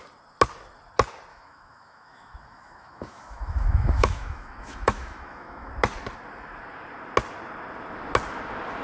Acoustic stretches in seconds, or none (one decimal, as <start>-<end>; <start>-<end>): 0.0-1.3; 5.7-8.8